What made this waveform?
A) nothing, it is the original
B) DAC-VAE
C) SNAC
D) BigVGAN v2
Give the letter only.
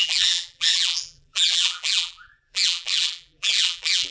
D